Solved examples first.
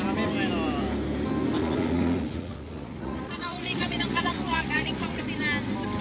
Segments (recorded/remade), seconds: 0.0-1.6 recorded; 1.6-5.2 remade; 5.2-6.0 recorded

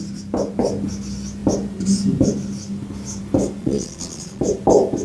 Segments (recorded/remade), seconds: 0.0-3.6 recorded; 3.6-4.4 remade; 4.4-5.0 recorded

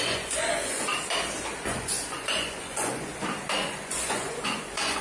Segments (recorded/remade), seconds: 0.0-0.9 remade; 0.9-1.6 recorded; 1.6-3.1 remade; 3.1-3.6 recorded; 3.6-5.0 remade